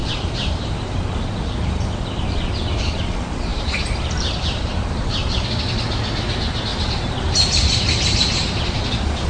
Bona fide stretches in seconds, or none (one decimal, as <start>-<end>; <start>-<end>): 1.0-3.5; 5.5-6.7; 8.9-9.3